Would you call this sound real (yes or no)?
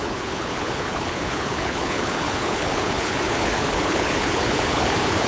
no